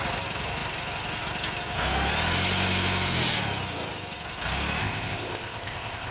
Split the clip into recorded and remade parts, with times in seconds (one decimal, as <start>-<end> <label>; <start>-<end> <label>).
0.0-4.8 recorded; 4.8-6.1 remade